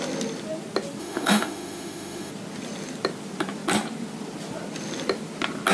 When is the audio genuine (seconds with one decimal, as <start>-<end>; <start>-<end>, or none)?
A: 0.0-1.0; 2.3-5.7